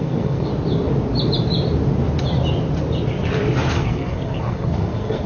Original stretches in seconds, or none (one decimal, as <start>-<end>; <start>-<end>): 0.5-3.7